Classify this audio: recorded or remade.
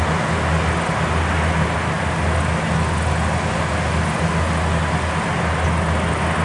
recorded